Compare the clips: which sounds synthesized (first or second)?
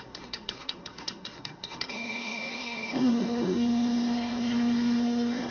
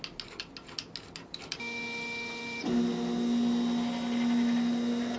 first